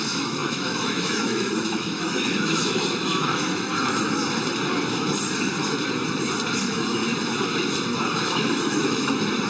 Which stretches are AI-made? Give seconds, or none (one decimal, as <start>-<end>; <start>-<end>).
0.0-3.7; 6.6-7.0; 8.2-9.5